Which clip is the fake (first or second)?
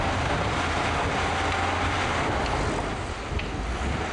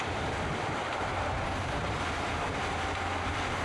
second